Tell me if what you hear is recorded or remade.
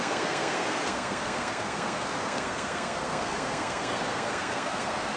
remade